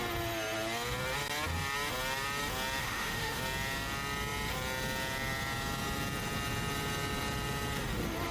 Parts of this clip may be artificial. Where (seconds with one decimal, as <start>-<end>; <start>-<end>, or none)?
2.8-3.4